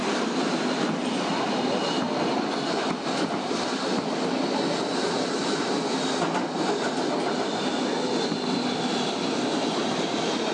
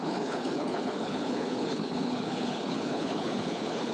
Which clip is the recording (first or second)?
first